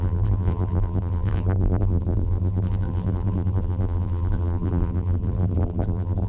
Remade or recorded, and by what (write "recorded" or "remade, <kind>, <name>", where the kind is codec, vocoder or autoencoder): remade, vocoder, BigVGAN v2